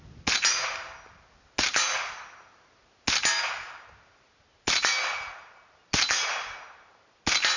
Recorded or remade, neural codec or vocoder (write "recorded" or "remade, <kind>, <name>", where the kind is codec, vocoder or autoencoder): recorded